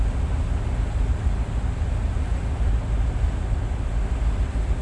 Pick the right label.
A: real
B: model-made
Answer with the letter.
A